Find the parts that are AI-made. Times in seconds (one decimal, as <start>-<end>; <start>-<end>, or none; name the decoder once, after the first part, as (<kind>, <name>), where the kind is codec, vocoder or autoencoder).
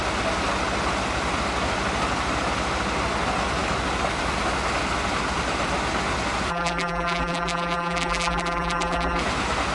6.5-9.2 (vocoder, BigVGAN v2)